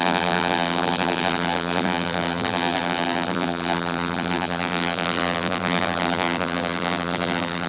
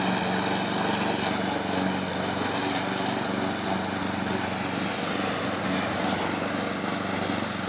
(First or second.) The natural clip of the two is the second